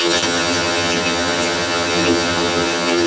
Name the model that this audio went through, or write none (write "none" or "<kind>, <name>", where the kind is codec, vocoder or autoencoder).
vocoder, HiFi-GAN